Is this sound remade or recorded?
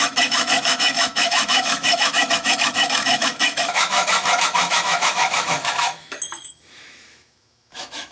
remade